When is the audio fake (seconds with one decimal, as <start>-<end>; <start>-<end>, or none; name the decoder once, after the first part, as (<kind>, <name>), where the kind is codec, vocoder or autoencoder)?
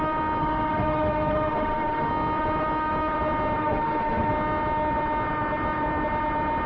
0.4-2.1 (autoencoder, DAC-VAE); 3.6-4.3